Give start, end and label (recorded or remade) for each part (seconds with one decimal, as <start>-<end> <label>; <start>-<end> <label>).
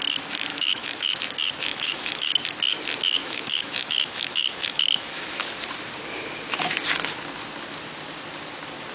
0.0-0.5 recorded; 0.5-1.2 remade; 1.2-1.7 recorded; 1.7-2.3 remade; 2.3-3.2 recorded; 3.2-5.5 remade; 5.5-8.9 recorded